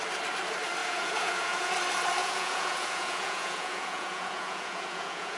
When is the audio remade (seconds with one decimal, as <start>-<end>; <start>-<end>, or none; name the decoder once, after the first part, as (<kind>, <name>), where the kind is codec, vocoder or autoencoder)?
0.8-1.7 (vocoder, Vocos); 2.2-5.4